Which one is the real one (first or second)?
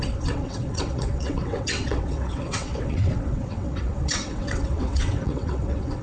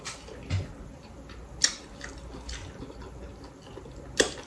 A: second